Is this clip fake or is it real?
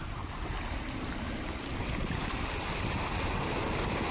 real